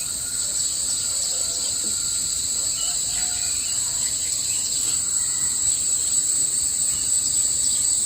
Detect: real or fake fake